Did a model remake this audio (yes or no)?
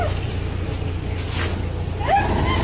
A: no